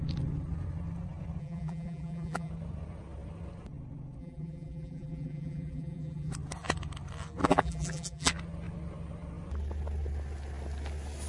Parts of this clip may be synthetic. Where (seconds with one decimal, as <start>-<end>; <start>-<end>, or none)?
1.4-2.5; 4.2-6.3; 7.4-8.3